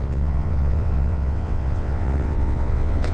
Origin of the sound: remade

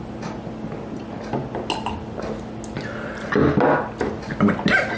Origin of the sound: recorded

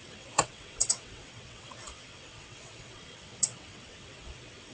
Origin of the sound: remade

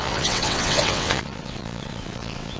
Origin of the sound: remade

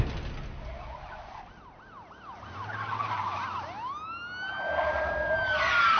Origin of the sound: recorded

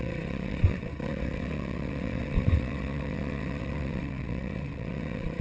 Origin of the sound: remade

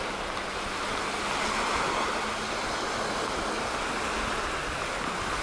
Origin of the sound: recorded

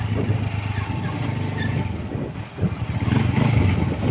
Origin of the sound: recorded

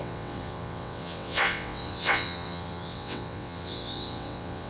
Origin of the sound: remade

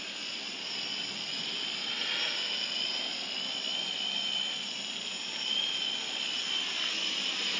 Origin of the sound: recorded